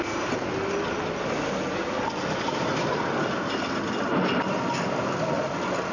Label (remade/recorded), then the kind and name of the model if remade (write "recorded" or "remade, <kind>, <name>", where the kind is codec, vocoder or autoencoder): recorded